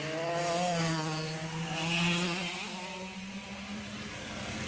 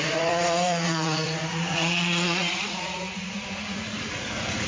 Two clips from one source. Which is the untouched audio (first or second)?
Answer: first